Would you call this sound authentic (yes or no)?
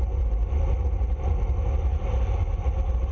yes